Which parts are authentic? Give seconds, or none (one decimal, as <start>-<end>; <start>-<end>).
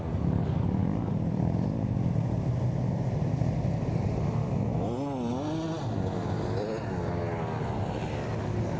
0.8-3.7; 4.4-8.4